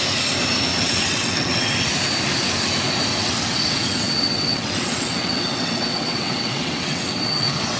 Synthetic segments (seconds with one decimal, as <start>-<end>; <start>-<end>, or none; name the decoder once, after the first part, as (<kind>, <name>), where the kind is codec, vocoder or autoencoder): 0.7-1.9 (vocoder, WaveNeXt); 3.1-7.8